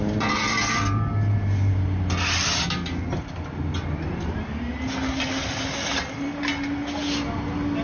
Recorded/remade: recorded